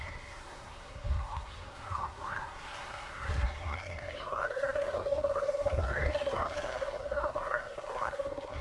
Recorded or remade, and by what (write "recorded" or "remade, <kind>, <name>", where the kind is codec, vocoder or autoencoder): remade, codec, SNAC